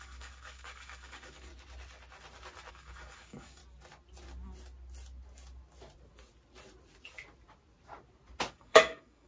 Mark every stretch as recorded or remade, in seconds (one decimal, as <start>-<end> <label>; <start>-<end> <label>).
0.0-1.5 remade; 1.5-2.7 recorded; 2.7-3.6 remade; 3.6-8.5 recorded; 8.5-9.3 remade